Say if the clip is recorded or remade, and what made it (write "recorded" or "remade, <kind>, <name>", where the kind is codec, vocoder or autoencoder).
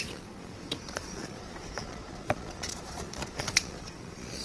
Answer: remade, vocoder, Vocos